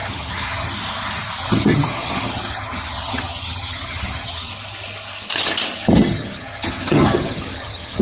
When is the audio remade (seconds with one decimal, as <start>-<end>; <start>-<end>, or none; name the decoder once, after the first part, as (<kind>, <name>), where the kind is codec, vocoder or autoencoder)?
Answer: 0.0-0.7 (vocoder, HiFi-GAN); 1.4-4.5; 6.0-8.0